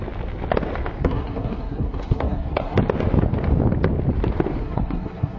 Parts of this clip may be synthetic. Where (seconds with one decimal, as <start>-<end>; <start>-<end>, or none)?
1.0-2.8; 4.6-5.4